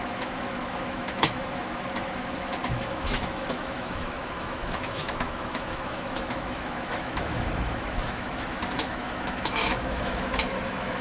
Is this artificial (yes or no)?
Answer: yes